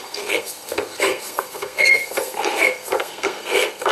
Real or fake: fake